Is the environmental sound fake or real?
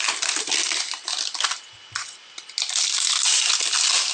real